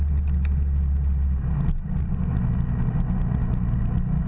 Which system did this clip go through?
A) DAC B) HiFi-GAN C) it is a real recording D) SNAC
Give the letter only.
C